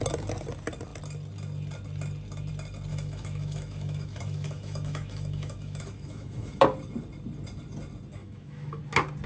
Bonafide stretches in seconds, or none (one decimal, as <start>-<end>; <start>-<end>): 0.0-2.9; 6.6-8.2; 8.8-9.3